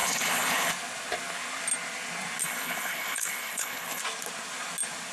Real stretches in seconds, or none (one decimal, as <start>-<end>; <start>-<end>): 0.7-2.4; 4.0-5.1

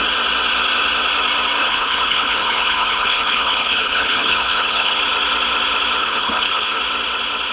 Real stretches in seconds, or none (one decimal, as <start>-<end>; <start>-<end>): 0.0-1.6; 5.0-6.0; 6.8-7.5

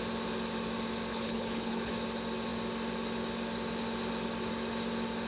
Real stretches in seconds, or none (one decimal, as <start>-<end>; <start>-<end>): 0.0-1.1; 1.9-5.3

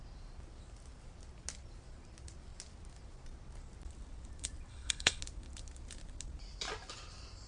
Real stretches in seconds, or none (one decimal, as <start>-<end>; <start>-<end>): 0.0-4.7; 5.2-7.5

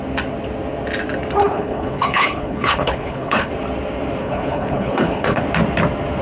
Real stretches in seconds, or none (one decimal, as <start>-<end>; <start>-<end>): 0.0-1.4; 3.5-4.2; 5.4-6.2

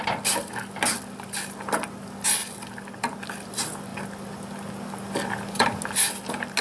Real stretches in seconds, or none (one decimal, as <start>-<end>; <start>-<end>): 0.0-6.6